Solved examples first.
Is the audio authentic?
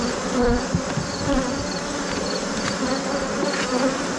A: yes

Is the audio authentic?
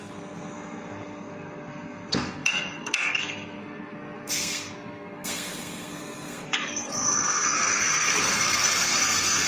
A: no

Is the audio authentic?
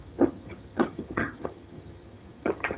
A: no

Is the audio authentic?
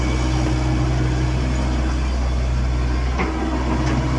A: yes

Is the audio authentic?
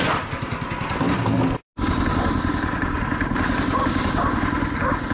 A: yes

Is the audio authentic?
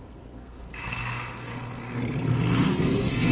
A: no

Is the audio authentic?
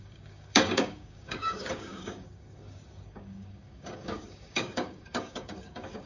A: no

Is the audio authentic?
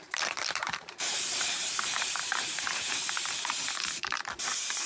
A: no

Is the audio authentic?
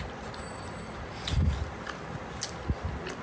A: yes